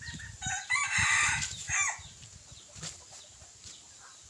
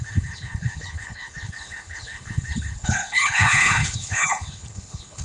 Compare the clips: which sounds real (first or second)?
first